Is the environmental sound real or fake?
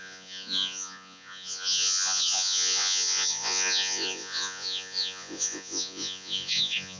fake